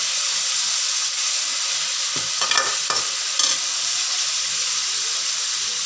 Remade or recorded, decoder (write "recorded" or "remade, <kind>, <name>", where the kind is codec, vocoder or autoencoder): recorded